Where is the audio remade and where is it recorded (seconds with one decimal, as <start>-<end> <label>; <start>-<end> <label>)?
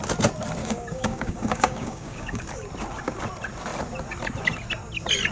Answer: 0.0-0.6 recorded; 0.6-2.4 remade; 2.4-5.3 recorded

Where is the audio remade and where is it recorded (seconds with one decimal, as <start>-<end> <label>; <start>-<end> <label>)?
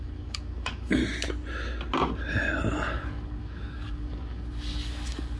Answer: 0.0-1.0 remade; 1.0-2.9 recorded; 2.9-5.4 remade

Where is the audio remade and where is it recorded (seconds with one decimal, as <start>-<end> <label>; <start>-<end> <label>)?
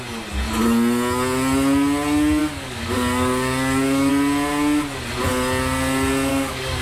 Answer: 0.0-2.4 recorded; 2.4-4.1 remade; 4.1-6.3 recorded; 6.3-6.8 remade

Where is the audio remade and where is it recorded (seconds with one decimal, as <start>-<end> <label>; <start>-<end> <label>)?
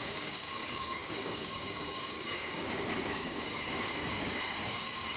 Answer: 0.0-5.2 remade